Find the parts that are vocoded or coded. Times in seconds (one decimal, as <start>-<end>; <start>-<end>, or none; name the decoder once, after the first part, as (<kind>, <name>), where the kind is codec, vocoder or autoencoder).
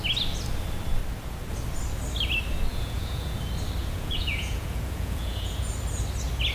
2.7-3.4 (vocoder, Vocos); 3.8-5.7